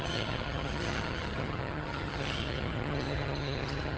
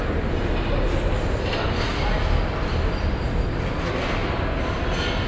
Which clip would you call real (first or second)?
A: second